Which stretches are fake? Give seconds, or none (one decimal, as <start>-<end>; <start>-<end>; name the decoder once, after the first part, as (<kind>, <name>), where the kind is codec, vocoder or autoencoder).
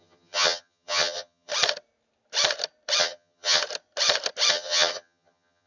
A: 0.0-1.5 (vocoder, HiFi-GAN); 3.0-3.6; 4.5-5.7